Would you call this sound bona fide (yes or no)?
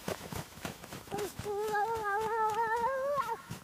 no